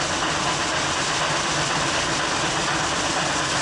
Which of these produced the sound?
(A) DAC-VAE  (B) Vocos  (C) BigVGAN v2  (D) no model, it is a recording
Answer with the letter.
D